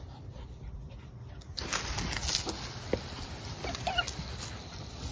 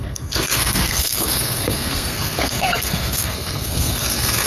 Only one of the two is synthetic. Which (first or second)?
second